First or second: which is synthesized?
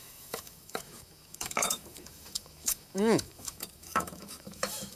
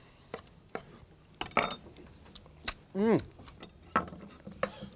first